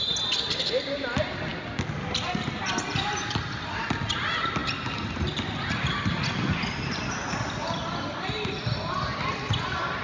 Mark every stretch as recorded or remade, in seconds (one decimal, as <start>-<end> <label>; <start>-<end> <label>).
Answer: 0.0-10.0 recorded